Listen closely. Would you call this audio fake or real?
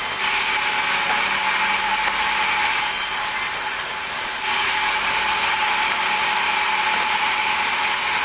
real